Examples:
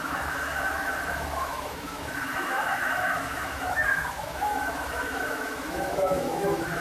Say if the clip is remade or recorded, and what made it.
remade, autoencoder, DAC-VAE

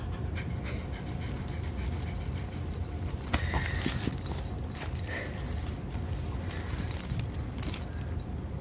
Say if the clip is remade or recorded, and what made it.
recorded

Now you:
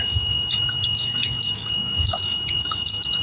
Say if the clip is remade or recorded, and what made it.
remade, autoencoder, DAC-VAE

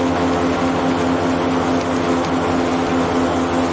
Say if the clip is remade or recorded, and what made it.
recorded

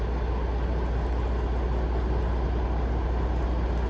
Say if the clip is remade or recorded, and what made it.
recorded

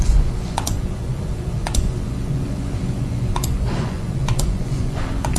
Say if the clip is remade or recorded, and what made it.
remade, vocoder, Vocos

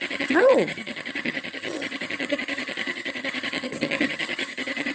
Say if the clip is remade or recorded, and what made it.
remade, vocoder, HiFi-GAN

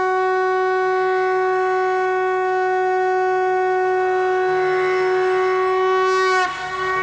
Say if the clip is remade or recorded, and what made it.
recorded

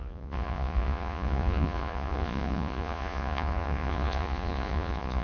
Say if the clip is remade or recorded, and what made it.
remade, vocoder, Vocos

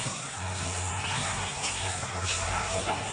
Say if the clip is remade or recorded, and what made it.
remade, codec, SNAC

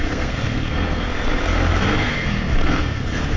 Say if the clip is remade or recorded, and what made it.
remade, codec, SNAC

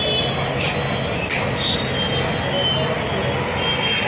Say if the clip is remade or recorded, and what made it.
recorded